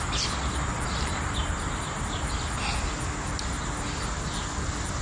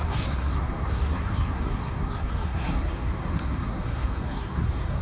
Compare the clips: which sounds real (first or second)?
first